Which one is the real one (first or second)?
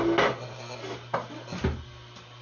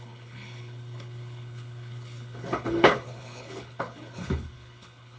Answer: first